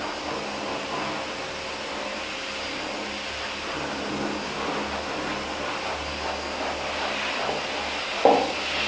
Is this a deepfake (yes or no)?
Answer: no